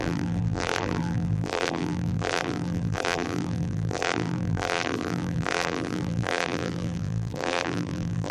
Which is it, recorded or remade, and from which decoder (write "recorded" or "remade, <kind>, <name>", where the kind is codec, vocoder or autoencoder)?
remade, vocoder, BigVGAN v2